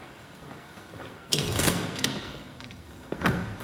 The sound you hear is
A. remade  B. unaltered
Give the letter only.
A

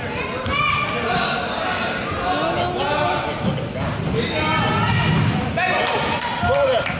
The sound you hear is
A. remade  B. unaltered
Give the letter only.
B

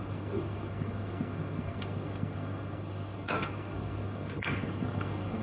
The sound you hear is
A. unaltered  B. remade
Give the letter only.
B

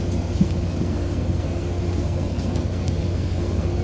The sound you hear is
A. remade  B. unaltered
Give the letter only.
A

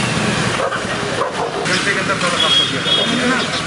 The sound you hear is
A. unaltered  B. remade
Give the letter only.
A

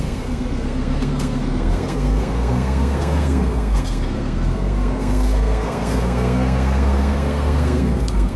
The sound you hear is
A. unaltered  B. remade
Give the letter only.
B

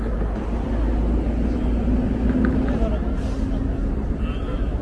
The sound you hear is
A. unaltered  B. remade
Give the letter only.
A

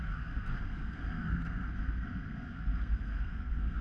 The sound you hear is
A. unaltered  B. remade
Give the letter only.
B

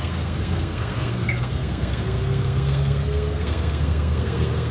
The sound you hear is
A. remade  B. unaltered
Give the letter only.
A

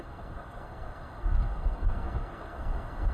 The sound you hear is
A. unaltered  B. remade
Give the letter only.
B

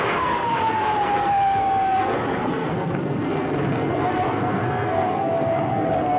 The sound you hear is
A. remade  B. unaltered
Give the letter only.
A